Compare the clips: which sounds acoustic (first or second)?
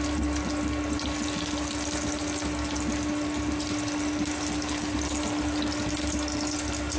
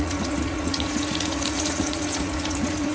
first